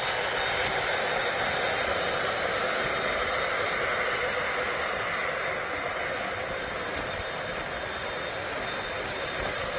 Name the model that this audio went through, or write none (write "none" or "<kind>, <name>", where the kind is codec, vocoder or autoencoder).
none